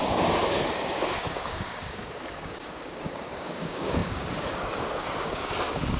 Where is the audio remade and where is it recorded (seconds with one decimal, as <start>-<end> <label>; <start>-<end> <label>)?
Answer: 0.0-6.0 remade